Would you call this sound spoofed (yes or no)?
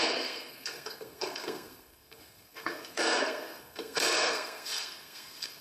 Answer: yes